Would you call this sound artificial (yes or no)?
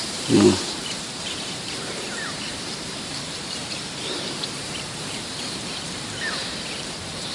yes